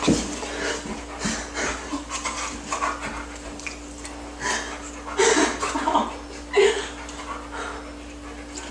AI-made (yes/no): no